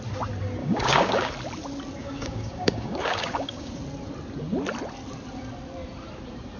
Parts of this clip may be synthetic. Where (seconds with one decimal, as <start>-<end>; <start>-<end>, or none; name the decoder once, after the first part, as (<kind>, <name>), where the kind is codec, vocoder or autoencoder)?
0.6-1.3 (codec, DAC); 2.0-3.8